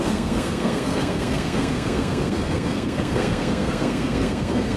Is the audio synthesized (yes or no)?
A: yes